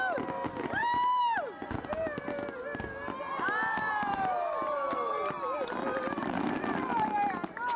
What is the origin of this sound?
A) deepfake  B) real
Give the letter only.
B